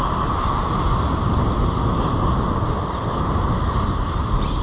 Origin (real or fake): real